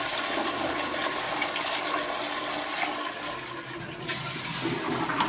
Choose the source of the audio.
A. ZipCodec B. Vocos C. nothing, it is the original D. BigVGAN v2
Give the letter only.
C